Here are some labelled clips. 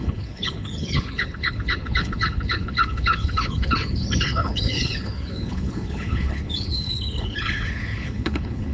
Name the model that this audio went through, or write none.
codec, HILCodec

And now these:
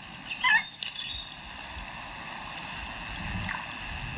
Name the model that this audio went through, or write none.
none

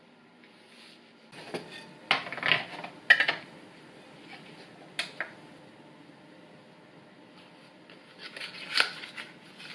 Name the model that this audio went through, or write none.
none